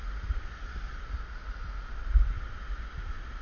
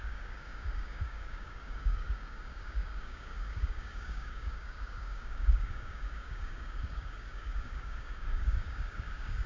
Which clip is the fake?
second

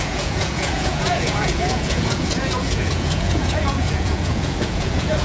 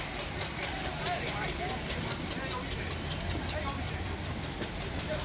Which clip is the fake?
first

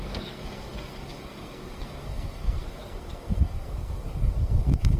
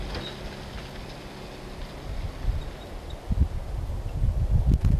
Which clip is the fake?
first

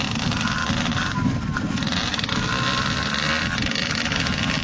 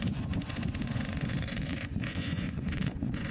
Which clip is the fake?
second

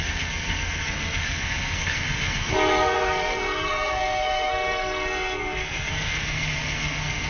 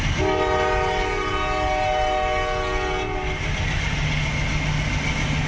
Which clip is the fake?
first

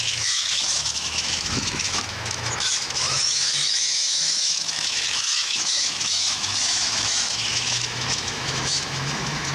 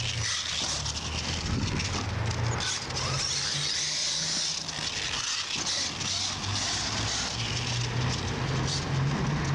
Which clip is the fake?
first